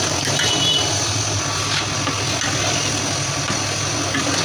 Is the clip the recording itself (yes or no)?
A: yes